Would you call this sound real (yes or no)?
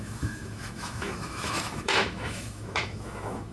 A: no